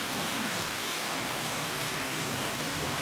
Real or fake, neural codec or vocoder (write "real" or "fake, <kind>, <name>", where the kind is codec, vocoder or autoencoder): fake, codec, DAC